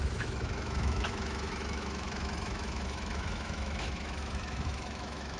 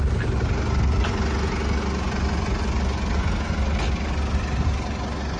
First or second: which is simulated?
first